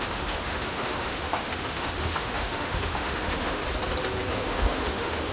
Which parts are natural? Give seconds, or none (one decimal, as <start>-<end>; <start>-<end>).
3.6-4.3